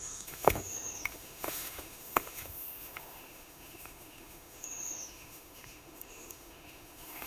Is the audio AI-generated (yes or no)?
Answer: yes